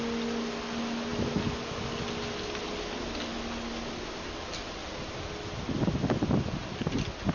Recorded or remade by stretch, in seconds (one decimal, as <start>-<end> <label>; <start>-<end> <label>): 0.0-7.3 recorded